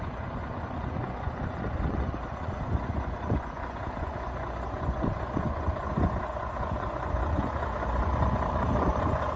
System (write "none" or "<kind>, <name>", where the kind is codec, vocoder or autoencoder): vocoder, Vocos